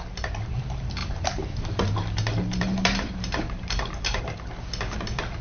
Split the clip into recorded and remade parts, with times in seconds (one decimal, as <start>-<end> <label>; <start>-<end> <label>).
0.0-1.0 recorded; 1.0-4.2 remade; 4.2-5.4 recorded